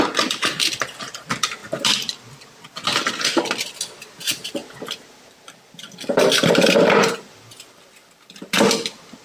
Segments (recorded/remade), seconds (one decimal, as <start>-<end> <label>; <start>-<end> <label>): 0.0-9.2 recorded